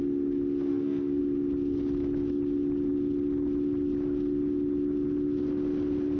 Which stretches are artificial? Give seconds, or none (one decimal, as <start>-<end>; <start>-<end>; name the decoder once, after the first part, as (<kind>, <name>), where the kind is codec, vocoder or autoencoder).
0.7-1.2 (codec, SNAC)